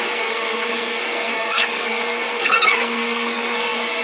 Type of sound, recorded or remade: remade